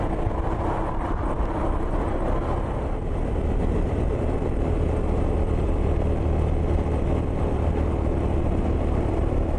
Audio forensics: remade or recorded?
remade